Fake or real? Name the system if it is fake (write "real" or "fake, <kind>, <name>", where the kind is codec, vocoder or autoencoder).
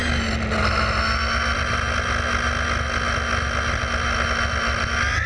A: real